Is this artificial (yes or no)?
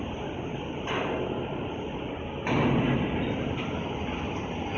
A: no